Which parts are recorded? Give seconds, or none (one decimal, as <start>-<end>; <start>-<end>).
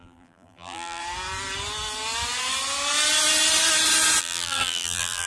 1.0-4.2